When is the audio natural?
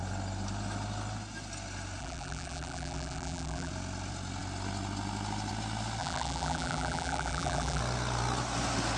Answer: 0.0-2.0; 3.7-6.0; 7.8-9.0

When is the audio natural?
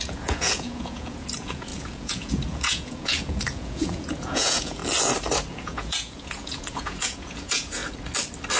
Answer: 4.8-5.5; 7.8-8.6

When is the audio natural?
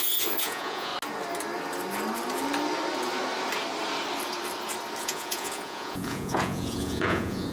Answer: 0.9-5.0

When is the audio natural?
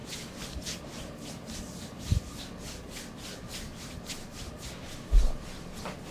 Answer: 1.6-6.1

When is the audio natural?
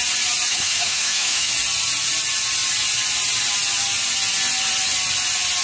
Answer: 0.0-0.5; 1.5-5.6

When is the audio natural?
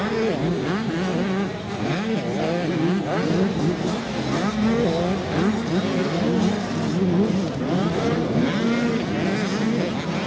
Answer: 0.0-10.3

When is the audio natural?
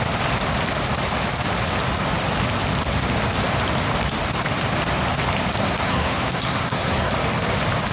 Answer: 0.0-5.6; 7.1-7.9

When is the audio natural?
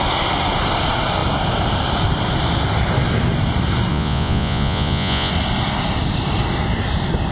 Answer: 0.0-3.9; 5.3-7.3